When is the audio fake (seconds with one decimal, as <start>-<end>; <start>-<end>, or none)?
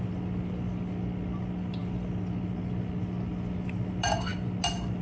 none